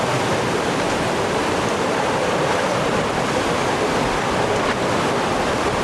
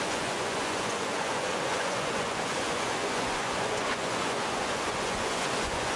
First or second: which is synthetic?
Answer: second